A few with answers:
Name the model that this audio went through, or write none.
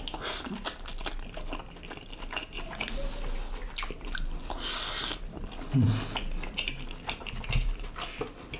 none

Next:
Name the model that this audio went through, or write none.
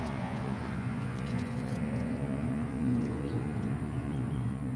vocoder, Vocos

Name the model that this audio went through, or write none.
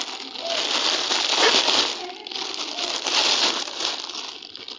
none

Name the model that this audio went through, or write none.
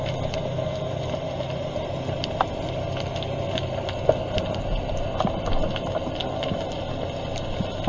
none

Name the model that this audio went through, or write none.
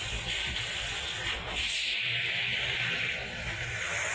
none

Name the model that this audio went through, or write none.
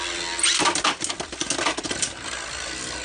none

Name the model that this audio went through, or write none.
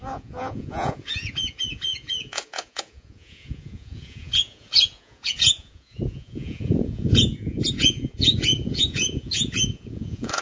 vocoder, Vocos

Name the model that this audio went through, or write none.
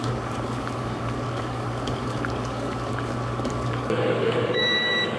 codec, DAC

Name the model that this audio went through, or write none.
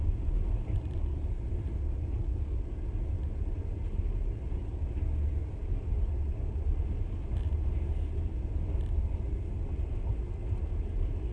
none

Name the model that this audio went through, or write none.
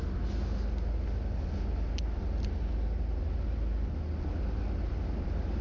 none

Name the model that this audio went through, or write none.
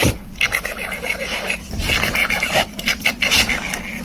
none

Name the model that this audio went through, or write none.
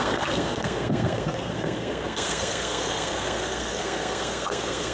codec, SNAC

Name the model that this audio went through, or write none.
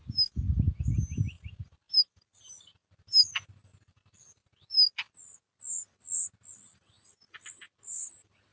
none